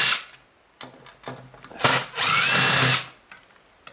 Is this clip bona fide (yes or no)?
yes